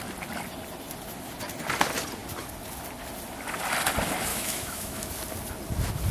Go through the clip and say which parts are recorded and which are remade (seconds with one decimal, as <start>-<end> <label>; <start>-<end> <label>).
0.0-4.3 recorded; 4.3-5.1 remade; 5.1-6.1 recorded